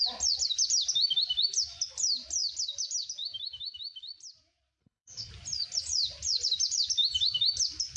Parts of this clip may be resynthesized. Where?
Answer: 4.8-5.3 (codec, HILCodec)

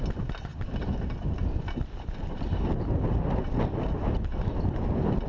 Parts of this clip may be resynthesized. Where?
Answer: none